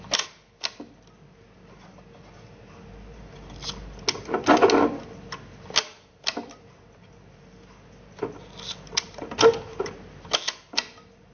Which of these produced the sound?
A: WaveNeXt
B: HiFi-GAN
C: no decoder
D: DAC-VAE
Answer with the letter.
C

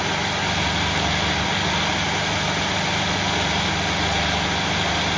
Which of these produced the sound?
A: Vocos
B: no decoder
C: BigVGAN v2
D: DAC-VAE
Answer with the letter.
B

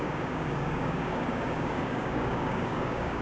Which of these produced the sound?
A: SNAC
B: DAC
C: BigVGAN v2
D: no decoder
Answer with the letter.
B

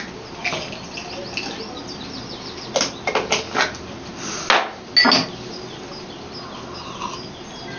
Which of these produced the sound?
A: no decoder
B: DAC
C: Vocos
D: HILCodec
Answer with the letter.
A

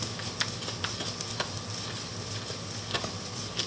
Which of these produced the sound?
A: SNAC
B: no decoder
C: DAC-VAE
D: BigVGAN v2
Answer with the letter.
B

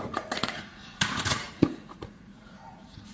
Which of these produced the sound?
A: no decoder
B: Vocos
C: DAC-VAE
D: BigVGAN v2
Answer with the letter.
B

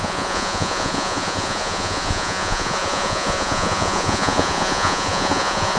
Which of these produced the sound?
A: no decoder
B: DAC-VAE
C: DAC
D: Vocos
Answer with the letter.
D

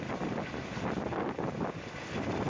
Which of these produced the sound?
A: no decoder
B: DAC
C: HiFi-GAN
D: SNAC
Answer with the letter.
A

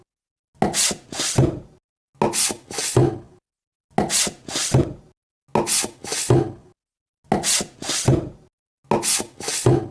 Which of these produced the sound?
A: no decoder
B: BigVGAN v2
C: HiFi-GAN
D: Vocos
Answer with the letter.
A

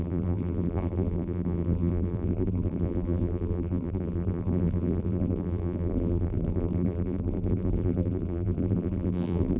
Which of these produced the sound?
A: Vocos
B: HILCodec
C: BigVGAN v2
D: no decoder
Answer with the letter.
C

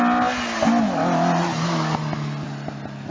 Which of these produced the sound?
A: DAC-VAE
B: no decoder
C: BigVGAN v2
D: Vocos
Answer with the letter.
B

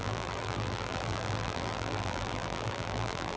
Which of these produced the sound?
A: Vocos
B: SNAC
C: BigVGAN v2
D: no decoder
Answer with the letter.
C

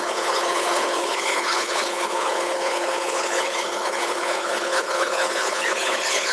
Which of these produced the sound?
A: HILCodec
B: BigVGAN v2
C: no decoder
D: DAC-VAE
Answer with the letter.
A